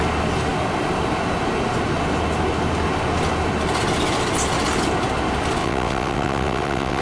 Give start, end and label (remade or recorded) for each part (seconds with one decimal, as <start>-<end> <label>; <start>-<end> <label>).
0.0-5.6 recorded; 5.6-7.0 remade